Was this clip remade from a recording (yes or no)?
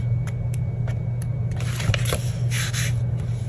no